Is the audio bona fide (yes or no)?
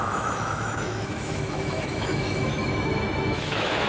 no